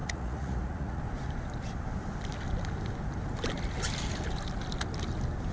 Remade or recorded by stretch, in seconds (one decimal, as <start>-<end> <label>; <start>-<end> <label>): 0.0-1.0 remade; 1.0-5.5 recorded